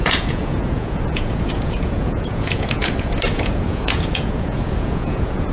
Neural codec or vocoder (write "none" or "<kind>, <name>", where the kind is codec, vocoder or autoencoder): vocoder, Vocos